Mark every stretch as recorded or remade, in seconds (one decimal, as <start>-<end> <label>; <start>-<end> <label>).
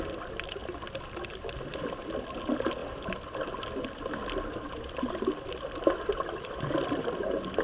0.0-7.6 recorded